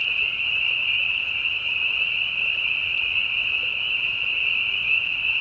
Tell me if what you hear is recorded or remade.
recorded